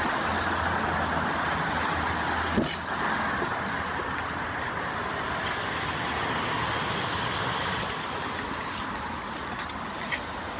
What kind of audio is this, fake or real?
real